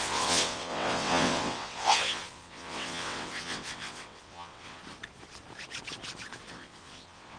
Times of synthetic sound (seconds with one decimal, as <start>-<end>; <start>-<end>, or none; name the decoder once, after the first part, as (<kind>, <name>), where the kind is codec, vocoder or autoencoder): 0.0-4.8 (vocoder, WaveNeXt); 6.5-7.4